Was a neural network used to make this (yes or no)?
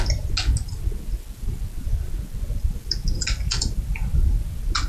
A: no